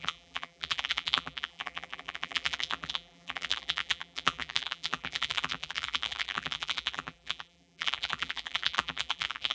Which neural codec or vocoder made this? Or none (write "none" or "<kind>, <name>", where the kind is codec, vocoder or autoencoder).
vocoder, BigVGAN v2